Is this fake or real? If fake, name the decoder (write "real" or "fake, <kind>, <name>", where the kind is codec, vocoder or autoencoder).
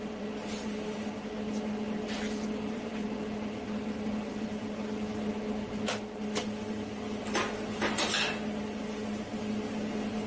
real